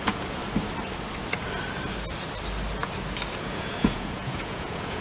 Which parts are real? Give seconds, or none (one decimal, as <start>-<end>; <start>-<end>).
0.4-3.4